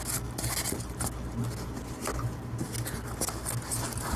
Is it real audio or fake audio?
real